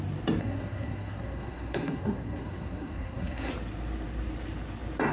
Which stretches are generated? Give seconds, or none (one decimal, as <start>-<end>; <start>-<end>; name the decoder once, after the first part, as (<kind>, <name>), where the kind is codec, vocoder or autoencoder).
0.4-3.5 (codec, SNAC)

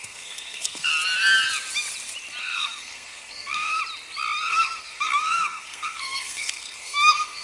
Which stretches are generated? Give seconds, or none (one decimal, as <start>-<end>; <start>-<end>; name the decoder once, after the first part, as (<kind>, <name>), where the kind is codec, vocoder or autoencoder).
0.0-0.9 (codec, SNAC); 2.4-3.8; 4.5-7.4

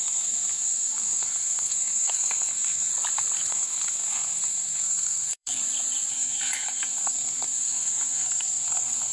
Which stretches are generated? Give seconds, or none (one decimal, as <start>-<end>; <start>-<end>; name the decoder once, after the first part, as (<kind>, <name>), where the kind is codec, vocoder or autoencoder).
0.0-2.9 (codec, SNAC); 3.5-5.6; 6.1-9.1

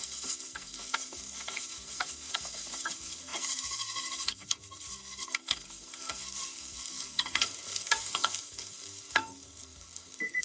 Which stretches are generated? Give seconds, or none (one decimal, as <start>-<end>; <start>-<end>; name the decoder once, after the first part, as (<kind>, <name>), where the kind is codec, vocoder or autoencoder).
0.0-10.4 (codec, SNAC)

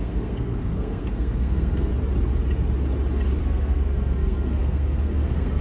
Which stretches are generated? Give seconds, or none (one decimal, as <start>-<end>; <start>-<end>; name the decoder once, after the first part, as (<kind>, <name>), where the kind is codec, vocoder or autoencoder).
0.0-1.9 (codec, SNAC); 3.4-5.6

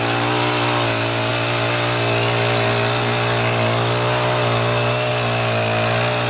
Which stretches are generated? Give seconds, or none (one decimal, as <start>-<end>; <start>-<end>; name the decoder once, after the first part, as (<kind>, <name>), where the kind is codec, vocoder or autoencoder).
none